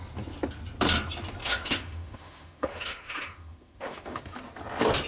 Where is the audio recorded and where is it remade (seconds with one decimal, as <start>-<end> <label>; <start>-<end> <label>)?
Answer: 0.0-1.4 recorded; 1.4-4.2 remade; 4.2-5.1 recorded